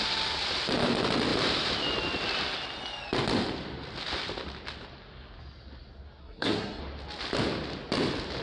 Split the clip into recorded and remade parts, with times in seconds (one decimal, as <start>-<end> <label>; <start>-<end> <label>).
0.0-6.2 recorded; 6.2-6.8 remade; 6.8-8.4 recorded